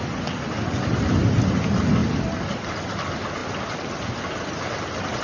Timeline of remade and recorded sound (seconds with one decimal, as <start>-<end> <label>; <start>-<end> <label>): 0.0-5.2 recorded